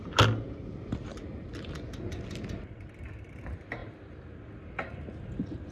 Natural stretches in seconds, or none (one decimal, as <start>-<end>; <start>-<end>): 0.0-5.7